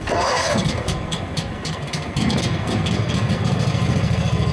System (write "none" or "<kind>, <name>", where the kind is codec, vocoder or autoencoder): codec, SNAC